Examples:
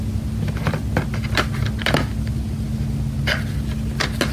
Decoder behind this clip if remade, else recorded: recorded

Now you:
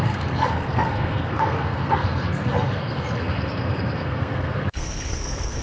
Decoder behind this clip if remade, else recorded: remade, codec, SNAC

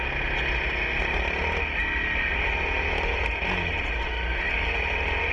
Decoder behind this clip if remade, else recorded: recorded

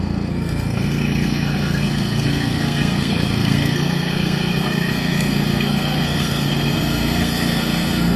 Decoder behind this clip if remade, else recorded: remade, codec, SNAC